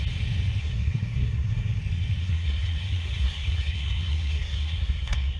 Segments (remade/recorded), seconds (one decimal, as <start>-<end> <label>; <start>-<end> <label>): 0.0-0.6 recorded; 0.6-1.8 remade; 1.8-2.2 recorded; 2.2-5.4 remade